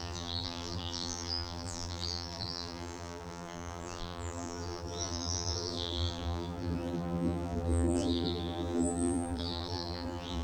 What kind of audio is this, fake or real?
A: fake